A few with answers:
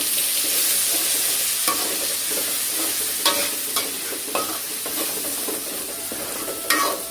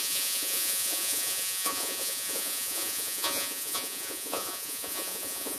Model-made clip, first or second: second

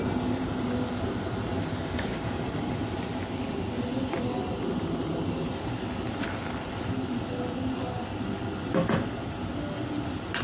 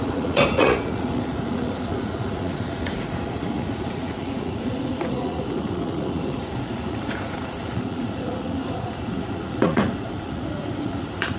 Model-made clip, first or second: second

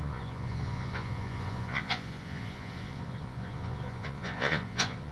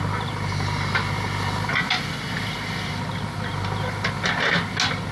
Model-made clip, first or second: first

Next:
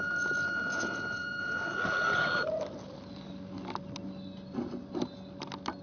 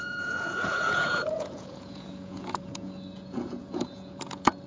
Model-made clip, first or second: second